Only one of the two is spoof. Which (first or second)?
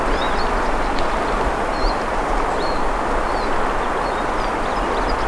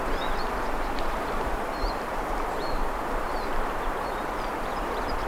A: second